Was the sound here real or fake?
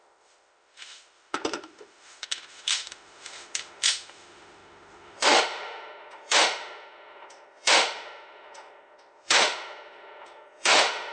fake